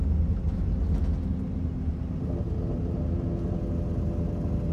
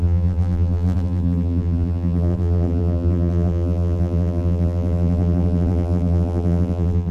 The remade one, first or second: second